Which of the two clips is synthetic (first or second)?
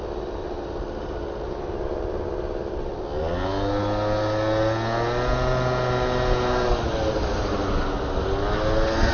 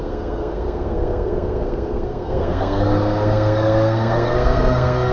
second